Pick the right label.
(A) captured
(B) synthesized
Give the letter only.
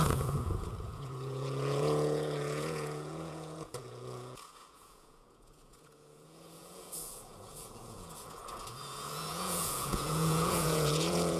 B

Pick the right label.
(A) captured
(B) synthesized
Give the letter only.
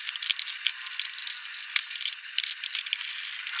A